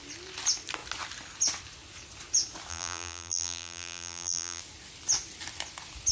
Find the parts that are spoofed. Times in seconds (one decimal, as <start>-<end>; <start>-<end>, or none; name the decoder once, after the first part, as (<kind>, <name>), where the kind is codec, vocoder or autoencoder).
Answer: 2.7-4.6 (vocoder, BigVGAN v2)